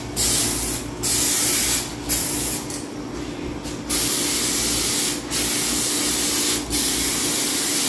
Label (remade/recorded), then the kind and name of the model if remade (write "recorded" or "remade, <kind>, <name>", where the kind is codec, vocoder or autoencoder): recorded